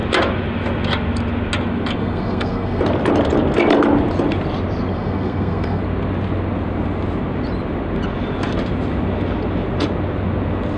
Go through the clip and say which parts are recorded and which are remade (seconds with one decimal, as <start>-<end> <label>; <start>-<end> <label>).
0.0-2.0 recorded; 2.0-2.8 remade; 2.8-4.9 recorded; 4.9-5.8 remade; 5.8-10.8 recorded